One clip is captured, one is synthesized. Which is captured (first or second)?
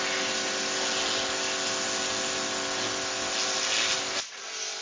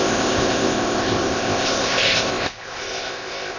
first